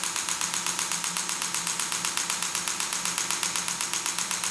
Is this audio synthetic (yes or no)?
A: no